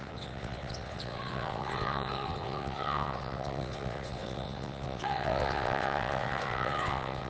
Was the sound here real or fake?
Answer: fake